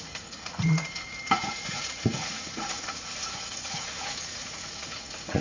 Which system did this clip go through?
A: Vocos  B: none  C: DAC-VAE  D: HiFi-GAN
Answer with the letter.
A